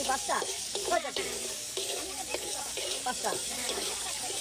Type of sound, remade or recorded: remade